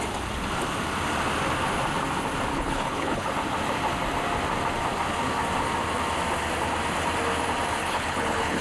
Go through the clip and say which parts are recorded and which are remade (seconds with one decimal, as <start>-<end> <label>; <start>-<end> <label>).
0.0-2.5 recorded; 2.5-3.3 remade; 3.3-7.8 recorded; 7.8-8.6 remade